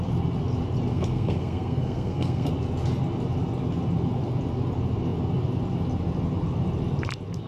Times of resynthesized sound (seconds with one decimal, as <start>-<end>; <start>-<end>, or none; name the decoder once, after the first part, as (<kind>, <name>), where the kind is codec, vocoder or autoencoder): 0.9-2.5 (codec, SNAC)